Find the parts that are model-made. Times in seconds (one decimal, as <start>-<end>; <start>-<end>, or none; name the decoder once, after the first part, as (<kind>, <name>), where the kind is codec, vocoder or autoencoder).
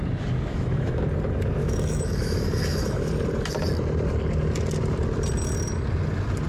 0.5-1.0 (autoencoder, DAC-VAE); 1.6-3.1